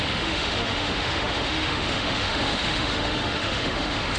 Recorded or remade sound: remade